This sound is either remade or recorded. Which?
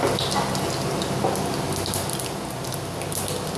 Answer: recorded